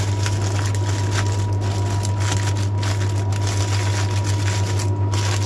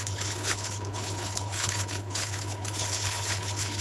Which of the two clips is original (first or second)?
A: first